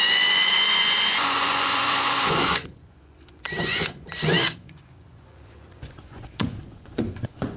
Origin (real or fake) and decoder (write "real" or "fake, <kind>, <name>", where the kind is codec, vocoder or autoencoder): fake, vocoder, Vocos